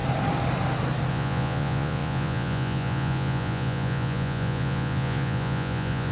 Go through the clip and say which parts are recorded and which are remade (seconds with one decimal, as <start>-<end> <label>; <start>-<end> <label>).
0.0-1.1 recorded; 1.1-6.1 remade